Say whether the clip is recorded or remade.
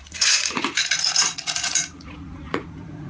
remade